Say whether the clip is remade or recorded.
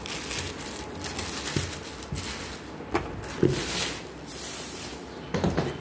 recorded